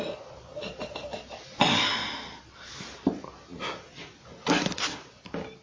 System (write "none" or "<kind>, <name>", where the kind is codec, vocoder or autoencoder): none